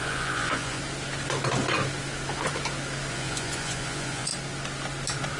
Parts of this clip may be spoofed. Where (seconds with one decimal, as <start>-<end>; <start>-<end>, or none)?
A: 0.0-0.8; 3.1-4.3